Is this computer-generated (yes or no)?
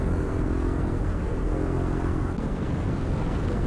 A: yes